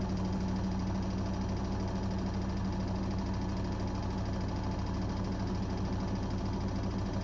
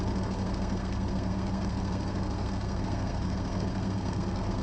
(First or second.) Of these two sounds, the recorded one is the first